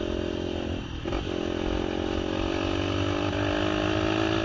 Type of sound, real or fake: real